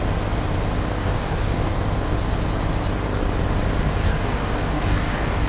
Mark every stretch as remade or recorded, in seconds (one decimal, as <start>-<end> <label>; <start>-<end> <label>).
0.0-1.0 recorded; 1.0-1.7 remade; 1.7-4.0 recorded; 4.0-5.5 remade